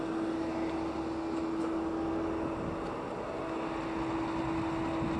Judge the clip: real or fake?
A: real